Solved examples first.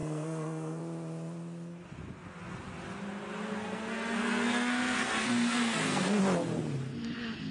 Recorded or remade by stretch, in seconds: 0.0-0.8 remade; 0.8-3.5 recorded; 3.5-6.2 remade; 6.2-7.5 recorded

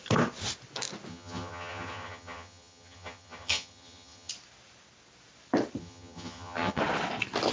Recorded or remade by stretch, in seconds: 0.0-1.1 recorded; 1.1-4.3 remade; 4.3-5.8 recorded; 5.8-6.8 remade; 6.8-7.5 recorded

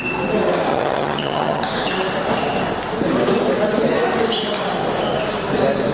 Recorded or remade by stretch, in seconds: 0.0-0.7 recorded; 0.7-1.6 remade; 1.6-5.9 recorded

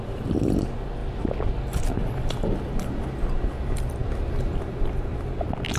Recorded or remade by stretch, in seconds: 0.0-5.8 recorded

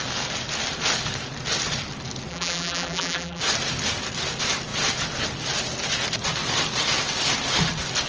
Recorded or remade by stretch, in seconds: 0.0-2.3 recorded; 2.3-3.4 remade; 3.4-8.1 recorded

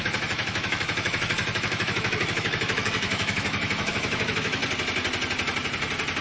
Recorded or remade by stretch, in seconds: 0.0-4.6 remade; 4.6-6.2 recorded

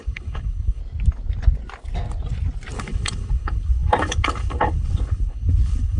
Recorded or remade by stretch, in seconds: 0.0-0.8 remade; 0.8-2.8 recorded; 2.8-6.0 remade